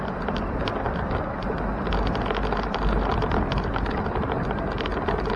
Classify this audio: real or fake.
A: real